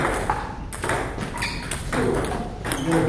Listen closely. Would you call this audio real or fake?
real